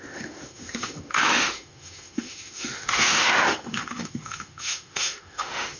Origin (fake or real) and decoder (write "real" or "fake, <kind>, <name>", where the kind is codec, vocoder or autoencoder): fake, autoencoder, DAC-VAE